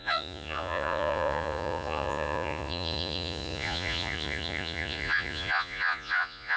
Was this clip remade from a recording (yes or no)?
yes